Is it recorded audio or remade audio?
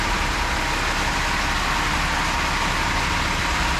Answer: recorded